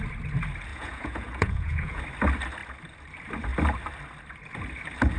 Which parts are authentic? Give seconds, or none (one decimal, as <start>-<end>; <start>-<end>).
0.0-0.7; 2.0-5.2